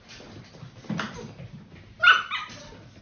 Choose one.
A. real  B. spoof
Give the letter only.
A